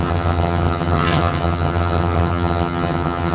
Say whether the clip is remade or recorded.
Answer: remade